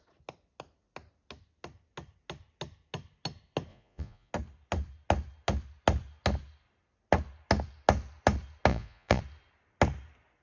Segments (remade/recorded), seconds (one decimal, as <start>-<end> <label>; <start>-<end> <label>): 0.0-3.7 recorded; 3.7-4.3 remade; 4.3-8.7 recorded; 8.7-9.2 remade; 9.2-10.4 recorded